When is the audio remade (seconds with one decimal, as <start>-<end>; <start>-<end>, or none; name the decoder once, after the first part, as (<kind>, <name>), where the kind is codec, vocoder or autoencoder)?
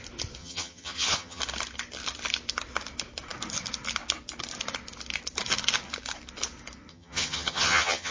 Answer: 0.4-1.4 (vocoder, HiFi-GAN); 6.9-8.1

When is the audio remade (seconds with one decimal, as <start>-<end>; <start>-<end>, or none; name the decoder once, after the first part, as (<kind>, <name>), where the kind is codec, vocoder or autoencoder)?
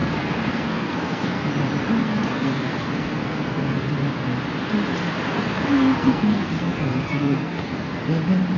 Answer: 0.0-1.5 (codec, SNAC); 2.0-3.9; 5.3-8.0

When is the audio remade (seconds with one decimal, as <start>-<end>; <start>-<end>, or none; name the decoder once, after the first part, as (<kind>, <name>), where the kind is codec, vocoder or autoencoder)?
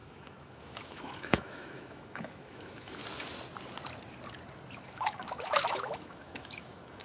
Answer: 0.0-3.0 (autoencoder, DAC-VAE); 5.0-7.0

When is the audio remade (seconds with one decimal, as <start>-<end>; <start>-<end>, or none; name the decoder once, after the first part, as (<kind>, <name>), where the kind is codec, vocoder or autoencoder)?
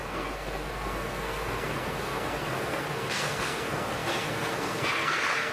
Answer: 0.0-5.5 (codec, SNAC)